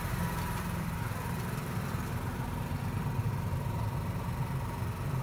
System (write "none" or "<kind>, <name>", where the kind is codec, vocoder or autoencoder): vocoder, BigVGAN v2